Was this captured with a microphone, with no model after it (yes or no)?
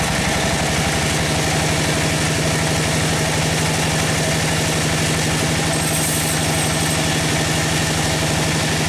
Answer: yes